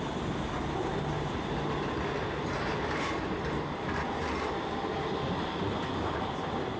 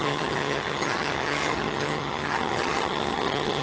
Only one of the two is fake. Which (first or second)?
second